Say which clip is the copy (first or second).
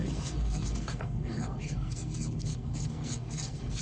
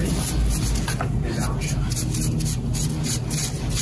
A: first